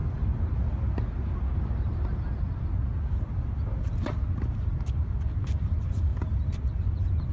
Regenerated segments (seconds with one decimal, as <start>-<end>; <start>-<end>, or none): none